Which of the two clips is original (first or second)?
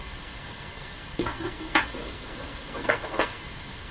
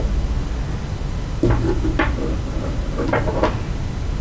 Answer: second